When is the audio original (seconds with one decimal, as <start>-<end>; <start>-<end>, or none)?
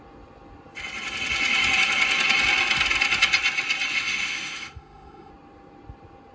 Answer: 0.0-3.9; 5.3-6.3